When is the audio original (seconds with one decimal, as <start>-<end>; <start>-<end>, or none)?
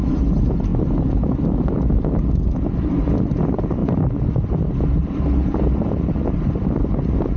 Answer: 0.0-7.4